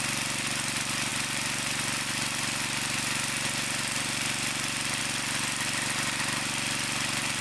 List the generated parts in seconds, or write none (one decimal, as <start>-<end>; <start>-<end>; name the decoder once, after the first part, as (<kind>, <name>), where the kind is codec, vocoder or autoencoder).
none